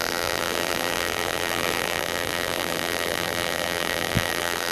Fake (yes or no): yes